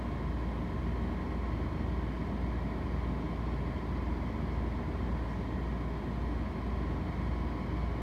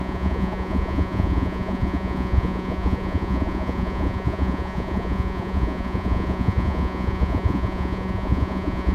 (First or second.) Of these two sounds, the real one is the first